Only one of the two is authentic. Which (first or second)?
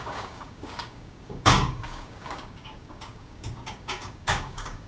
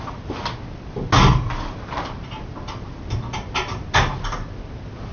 second